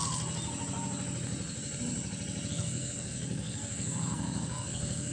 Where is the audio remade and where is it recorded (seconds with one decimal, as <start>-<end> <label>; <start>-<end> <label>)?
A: 0.0-2.5 recorded; 2.5-5.1 remade